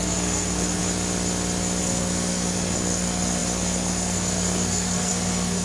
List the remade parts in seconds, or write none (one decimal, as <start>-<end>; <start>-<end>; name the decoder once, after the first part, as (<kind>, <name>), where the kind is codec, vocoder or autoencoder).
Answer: 0.0-0.8 (codec, SNAC); 1.8-5.6